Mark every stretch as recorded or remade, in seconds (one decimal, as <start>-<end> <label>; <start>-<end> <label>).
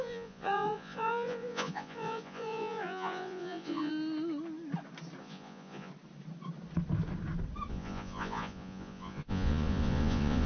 0.0-3.9 remade; 3.9-5.2 recorded; 5.2-5.9 remade; 5.9-7.7 recorded; 7.7-10.5 remade